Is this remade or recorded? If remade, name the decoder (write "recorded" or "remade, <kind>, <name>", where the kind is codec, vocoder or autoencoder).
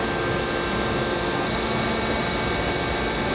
recorded